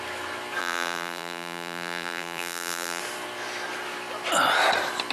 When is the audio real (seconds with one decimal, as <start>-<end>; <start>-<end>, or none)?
0.0-0.6; 3.0-5.1